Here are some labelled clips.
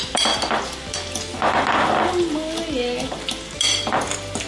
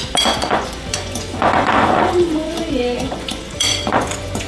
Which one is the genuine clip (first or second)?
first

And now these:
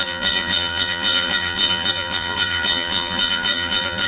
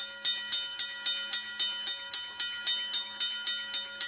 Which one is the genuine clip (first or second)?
second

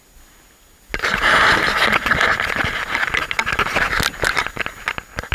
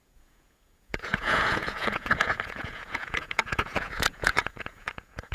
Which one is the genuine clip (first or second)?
first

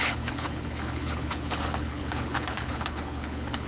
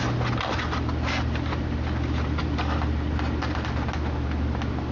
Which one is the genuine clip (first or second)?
second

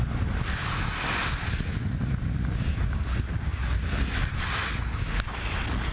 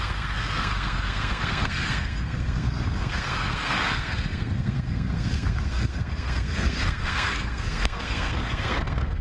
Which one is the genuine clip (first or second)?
first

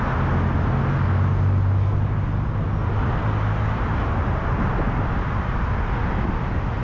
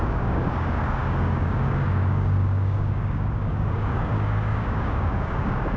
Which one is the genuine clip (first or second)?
first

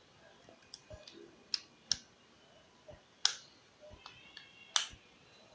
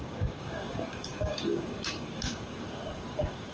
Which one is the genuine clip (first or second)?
first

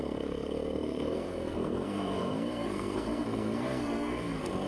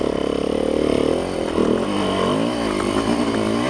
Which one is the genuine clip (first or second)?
second